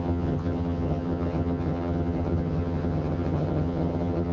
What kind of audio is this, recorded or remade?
remade